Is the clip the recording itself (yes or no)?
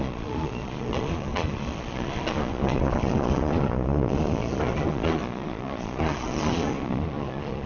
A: no